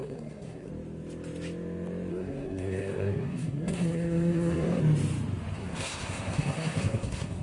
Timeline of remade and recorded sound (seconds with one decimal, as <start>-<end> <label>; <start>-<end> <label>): 0.0-0.7 remade; 0.7-2.1 recorded; 2.1-4.8 remade; 4.8-5.6 recorded; 5.6-7.4 remade